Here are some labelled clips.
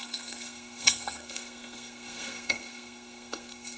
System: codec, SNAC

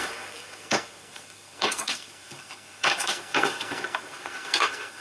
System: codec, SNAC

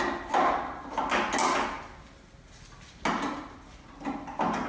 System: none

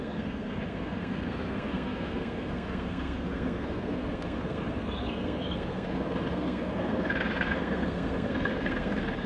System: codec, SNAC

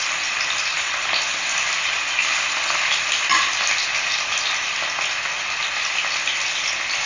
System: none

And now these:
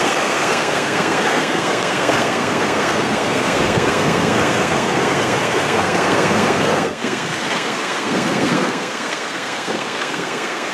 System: codec, SNAC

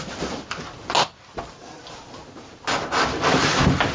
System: none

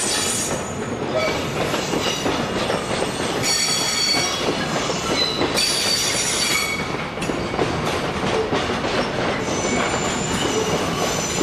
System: none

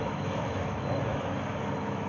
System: autoencoder, DAC-VAE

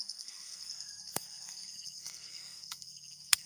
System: codec, SNAC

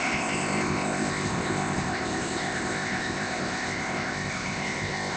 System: codec, ZipCodec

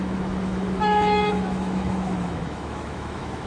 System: autoencoder, DAC-VAE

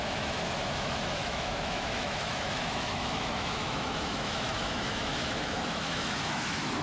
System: autoencoder, DAC-VAE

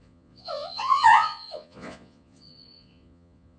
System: vocoder, Vocos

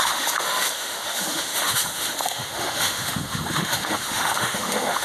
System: autoencoder, DAC-VAE